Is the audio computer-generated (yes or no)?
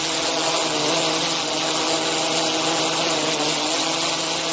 no